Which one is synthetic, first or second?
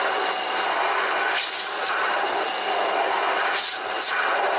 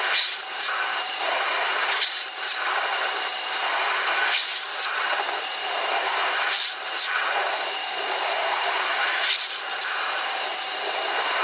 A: second